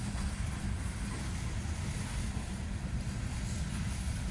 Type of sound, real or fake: real